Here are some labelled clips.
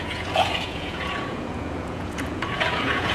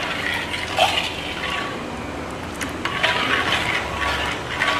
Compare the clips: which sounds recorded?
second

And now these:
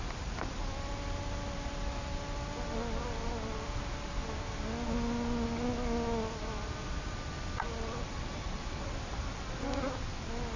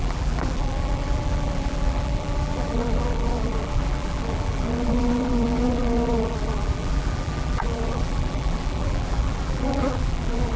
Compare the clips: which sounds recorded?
first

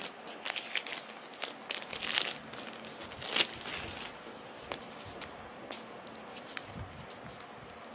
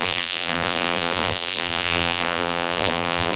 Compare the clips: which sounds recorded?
first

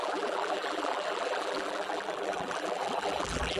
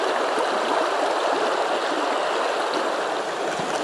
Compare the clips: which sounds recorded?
second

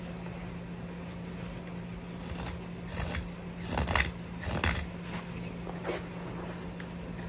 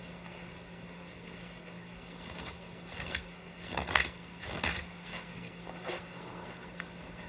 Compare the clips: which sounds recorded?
first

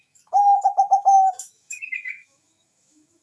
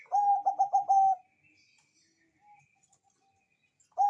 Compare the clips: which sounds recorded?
second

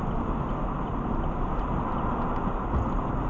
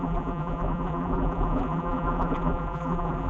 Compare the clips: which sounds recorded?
first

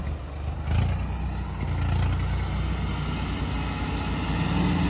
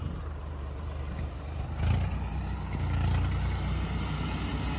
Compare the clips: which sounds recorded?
first